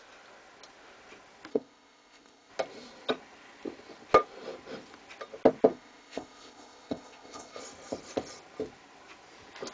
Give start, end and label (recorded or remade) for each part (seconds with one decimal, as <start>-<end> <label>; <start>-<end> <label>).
0.0-1.5 recorded; 1.5-2.5 remade; 2.5-5.7 recorded; 5.7-7.6 remade; 7.6-9.7 recorded